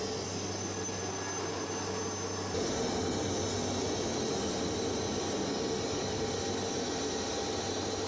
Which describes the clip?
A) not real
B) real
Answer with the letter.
B